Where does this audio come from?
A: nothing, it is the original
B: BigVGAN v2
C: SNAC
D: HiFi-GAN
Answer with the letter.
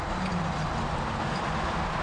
B